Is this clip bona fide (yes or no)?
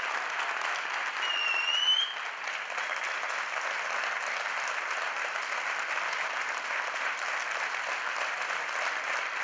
yes